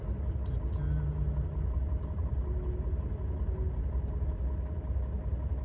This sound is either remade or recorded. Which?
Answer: recorded